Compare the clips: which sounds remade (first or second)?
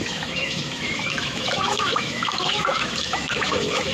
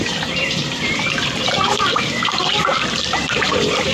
first